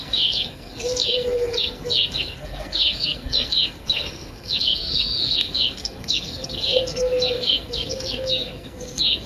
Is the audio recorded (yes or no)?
no